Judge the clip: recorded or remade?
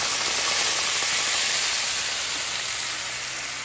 remade